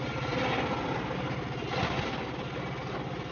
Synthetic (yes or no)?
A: no